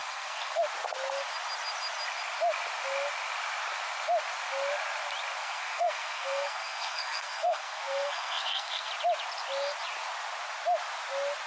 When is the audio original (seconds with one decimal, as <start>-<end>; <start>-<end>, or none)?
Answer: 0.6-5.4; 8.9-11.5

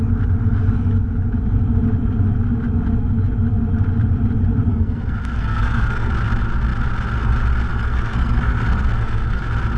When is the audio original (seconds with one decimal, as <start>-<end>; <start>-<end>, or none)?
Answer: 0.0-4.7; 6.1-7.7; 9.4-9.8

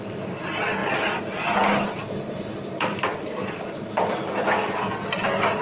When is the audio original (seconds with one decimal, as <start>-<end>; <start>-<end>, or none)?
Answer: 0.0-5.6

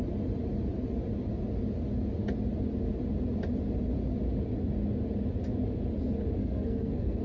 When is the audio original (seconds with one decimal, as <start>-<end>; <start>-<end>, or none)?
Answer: 0.0-6.4

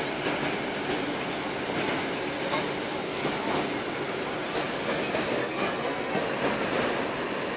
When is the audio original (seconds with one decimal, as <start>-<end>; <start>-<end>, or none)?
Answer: 0.0-5.4; 6.2-7.6

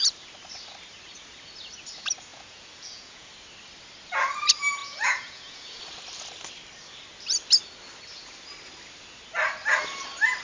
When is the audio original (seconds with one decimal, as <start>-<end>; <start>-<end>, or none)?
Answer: 0.0-2.3; 3.3-4.8; 5.8-10.4

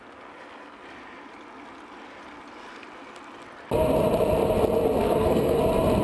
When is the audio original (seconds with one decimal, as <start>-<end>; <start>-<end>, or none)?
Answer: 0.0-5.0; 5.6-6.0

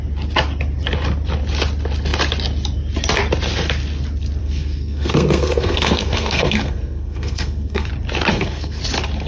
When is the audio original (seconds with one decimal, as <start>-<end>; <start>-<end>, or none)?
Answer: 0.0-4.4; 7.9-8.3; 8.8-9.3